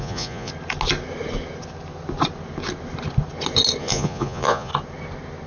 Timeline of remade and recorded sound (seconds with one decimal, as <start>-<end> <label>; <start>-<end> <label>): 0.0-0.5 remade; 0.5-3.8 recorded; 3.8-4.7 remade; 4.7-5.5 recorded